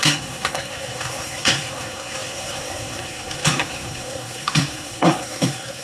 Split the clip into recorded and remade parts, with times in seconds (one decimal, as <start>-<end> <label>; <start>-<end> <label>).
0.0-5.8 remade